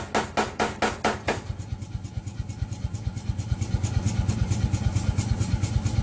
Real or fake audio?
real